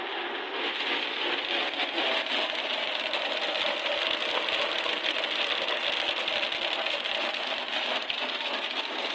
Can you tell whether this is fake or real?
real